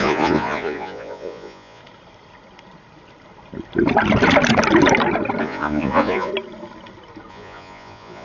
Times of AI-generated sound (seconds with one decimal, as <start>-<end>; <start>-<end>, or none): 0.0-1.8; 5.4-6.3; 7.3-8.2